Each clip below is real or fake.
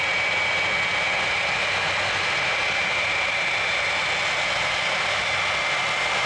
real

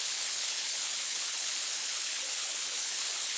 fake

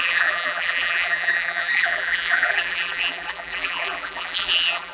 fake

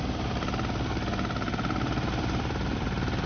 real